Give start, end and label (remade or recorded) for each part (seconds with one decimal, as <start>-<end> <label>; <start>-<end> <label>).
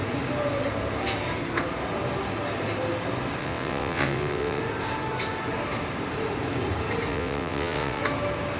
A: 0.0-3.4 recorded; 3.4-4.6 remade; 4.6-7.1 recorded; 7.1-8.0 remade; 8.0-8.6 recorded